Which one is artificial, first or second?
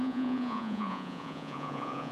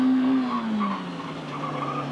first